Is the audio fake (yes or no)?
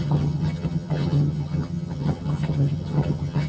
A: yes